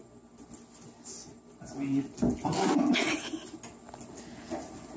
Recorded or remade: recorded